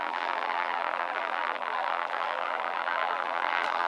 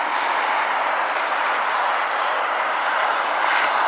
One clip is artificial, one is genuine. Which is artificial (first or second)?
first